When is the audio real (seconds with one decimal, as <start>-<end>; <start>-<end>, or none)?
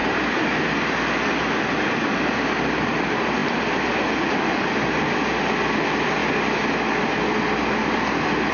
0.0-3.4; 4.3-8.5